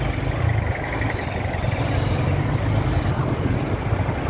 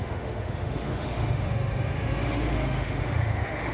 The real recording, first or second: first